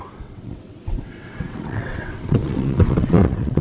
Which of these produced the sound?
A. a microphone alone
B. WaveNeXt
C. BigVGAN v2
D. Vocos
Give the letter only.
B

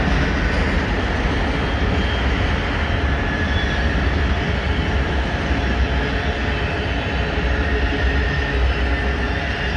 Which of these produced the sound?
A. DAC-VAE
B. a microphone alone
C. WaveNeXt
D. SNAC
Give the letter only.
B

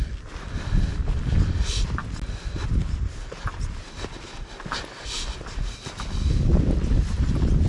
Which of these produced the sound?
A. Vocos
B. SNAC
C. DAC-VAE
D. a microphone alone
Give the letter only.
D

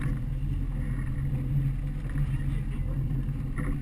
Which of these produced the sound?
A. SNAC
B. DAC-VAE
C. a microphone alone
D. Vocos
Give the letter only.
C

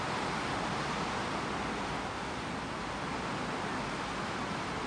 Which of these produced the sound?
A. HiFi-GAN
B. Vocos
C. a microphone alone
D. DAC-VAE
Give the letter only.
C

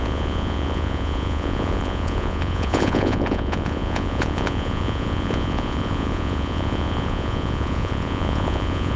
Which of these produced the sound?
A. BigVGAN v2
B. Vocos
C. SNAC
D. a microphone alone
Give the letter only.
B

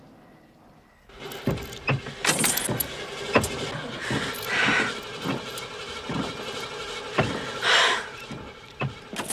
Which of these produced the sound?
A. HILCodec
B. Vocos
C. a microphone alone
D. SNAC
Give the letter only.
C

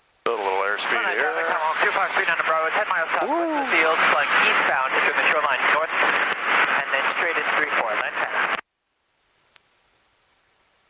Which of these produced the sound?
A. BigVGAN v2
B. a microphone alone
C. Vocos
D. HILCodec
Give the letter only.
B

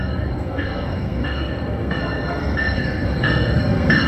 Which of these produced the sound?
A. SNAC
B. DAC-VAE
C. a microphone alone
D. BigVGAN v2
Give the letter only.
A